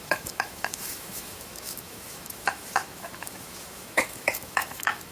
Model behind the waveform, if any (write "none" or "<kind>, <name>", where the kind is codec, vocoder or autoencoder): autoencoder, DAC-VAE